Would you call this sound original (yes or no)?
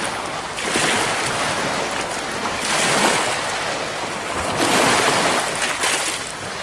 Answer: yes